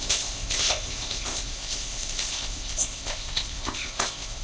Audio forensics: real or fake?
fake